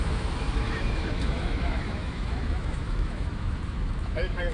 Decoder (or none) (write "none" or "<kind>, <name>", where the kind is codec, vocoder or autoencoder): autoencoder, DAC-VAE